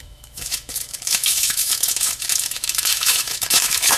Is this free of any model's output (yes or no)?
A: no